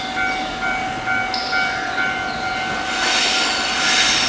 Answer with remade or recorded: recorded